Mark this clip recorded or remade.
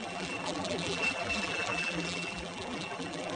remade